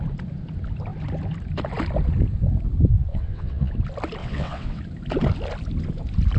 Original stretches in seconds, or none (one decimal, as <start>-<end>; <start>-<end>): 0.0-3.1; 3.7-4.2; 4.8-6.4